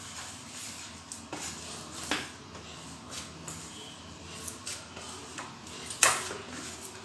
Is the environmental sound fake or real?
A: real